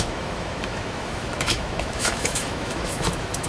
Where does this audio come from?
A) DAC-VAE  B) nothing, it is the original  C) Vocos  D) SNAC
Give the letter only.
A